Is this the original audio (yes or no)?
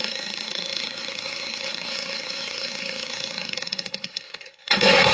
no